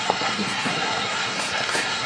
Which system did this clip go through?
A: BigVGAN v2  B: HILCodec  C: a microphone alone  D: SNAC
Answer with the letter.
D